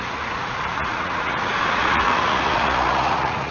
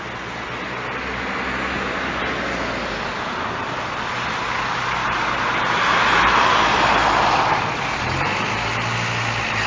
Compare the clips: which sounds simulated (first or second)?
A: first